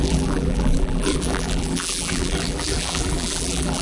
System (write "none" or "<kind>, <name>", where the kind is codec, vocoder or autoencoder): vocoder, BigVGAN v2